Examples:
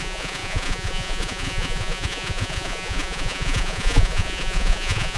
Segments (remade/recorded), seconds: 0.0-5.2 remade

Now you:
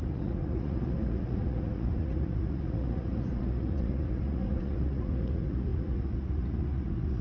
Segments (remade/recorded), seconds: 0.0-7.2 remade

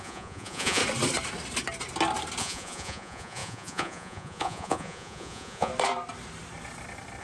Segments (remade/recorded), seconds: 0.0-0.8 remade; 0.8-2.4 recorded; 2.4-5.7 remade; 5.7-7.2 recorded